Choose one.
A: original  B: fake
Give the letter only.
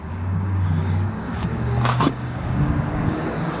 B